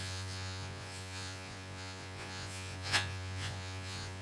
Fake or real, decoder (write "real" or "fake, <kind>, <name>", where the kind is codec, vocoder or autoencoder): fake, vocoder, Vocos